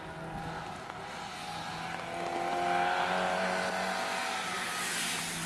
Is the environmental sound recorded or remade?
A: recorded